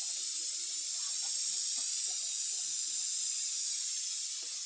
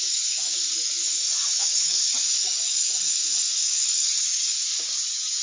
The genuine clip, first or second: first